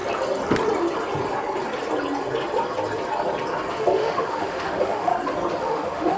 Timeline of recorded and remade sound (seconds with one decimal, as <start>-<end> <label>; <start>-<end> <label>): 0.0-3.7 recorded; 3.7-5.1 remade; 5.1-5.6 recorded; 5.6-6.2 remade